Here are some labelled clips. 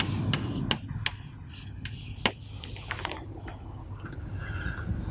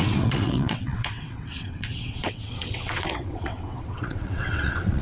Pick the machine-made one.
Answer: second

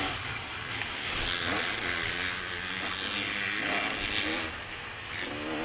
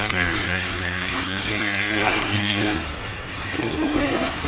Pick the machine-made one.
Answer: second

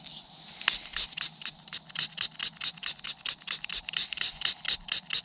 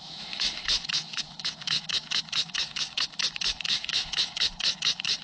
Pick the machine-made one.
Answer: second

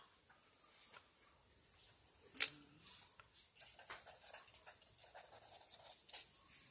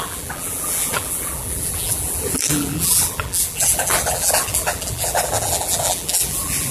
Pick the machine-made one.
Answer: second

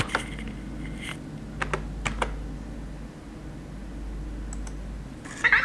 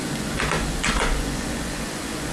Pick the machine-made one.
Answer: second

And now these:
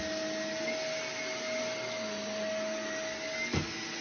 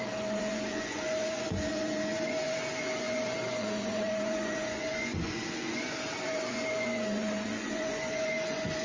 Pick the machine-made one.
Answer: second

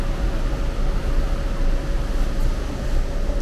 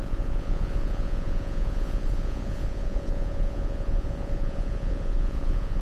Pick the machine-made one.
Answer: second